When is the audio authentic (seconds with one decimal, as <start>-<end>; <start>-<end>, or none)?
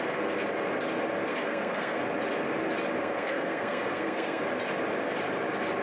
0.0-1.3; 2.0-3.0; 4.4-5.8